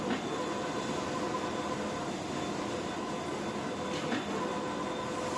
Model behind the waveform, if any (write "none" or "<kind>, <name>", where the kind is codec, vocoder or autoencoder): none